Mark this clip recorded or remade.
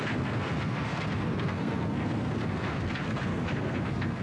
remade